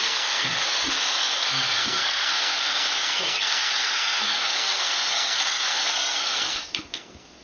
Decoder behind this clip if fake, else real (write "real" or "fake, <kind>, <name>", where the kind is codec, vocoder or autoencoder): fake, codec, SNAC